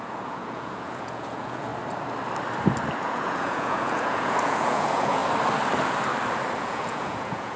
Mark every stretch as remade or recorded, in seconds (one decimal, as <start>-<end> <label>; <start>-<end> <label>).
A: 0.0-1.7 remade; 1.7-3.0 recorded; 3.0-5.2 remade; 5.2-6.6 recorded; 6.6-7.6 remade